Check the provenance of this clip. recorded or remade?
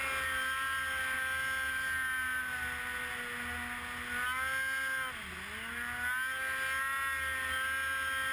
recorded